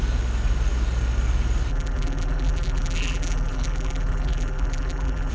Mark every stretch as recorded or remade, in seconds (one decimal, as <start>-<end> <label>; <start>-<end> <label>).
0.0-1.7 recorded; 1.7-5.3 remade